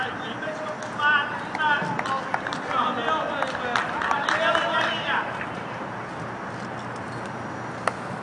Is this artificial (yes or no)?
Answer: no